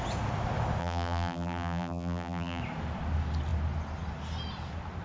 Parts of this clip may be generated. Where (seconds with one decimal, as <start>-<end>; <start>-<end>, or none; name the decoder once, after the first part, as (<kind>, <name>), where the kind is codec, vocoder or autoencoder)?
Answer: 0.8-2.6 (vocoder, BigVGAN v2)